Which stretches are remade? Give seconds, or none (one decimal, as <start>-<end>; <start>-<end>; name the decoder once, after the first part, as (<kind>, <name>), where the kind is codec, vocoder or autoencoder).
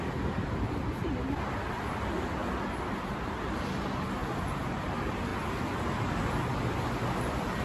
0.0-2.4 (vocoder, BigVGAN v2); 3.0-4.2; 4.7-5.3